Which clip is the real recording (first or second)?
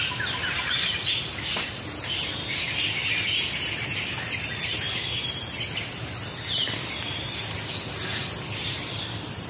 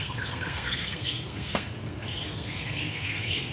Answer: first